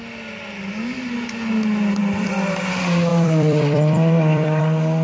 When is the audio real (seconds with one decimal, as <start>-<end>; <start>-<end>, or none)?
0.0-2.0; 2.6-3.1; 4.6-5.0